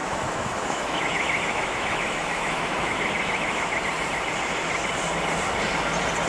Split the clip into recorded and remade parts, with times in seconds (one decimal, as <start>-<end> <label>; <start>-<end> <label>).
0.0-3.8 remade; 3.8-6.3 recorded